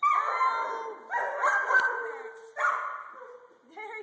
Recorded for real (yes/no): yes